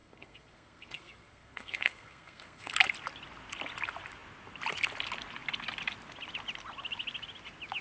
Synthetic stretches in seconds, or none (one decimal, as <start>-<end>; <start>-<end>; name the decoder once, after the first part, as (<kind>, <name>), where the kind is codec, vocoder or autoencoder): 0.0-2.7 (codec, SNAC)